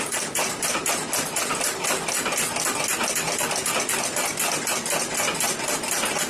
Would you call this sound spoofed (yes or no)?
no